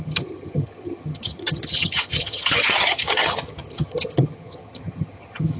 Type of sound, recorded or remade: remade